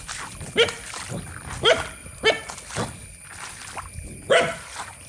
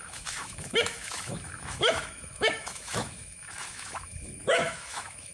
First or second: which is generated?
second